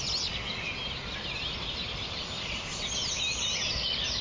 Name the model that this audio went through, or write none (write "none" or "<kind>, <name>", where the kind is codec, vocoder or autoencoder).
none